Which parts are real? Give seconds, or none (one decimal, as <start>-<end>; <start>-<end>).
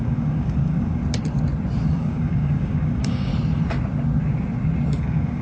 1.0-1.9; 3.3-5.0